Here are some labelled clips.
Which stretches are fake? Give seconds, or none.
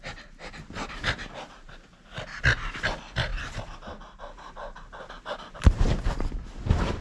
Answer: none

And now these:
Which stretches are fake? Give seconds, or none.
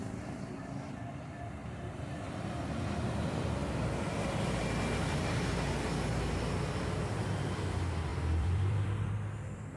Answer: 1.6-2.6; 8.1-9.1